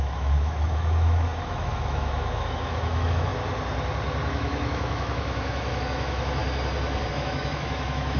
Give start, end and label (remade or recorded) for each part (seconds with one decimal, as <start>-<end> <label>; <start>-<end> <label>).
0.0-3.3 remade; 3.3-4.3 recorded; 4.3-6.4 remade; 6.4-7.1 recorded; 7.1-8.2 remade